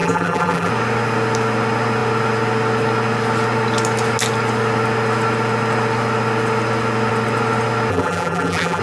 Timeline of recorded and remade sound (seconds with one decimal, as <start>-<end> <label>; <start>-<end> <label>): 0.0-0.7 remade; 0.7-7.9 recorded; 7.9-8.8 remade